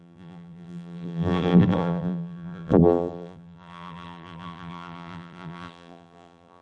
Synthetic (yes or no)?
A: yes